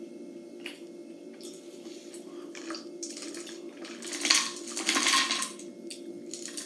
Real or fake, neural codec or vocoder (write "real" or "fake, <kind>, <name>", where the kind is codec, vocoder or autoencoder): real